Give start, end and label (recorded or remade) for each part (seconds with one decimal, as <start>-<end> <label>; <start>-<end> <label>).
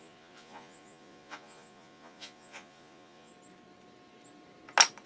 0.0-3.3 remade; 3.3-5.1 recorded